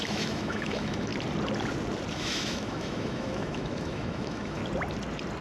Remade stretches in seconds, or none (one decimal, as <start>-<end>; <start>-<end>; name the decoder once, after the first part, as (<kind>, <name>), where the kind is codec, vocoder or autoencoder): 0.0-1.1 (autoencoder, DAC-VAE); 2.1-4.6